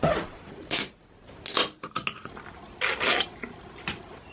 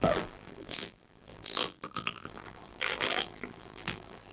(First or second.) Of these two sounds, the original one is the first